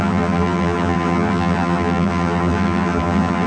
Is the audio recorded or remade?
remade